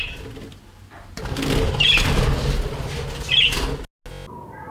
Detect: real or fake real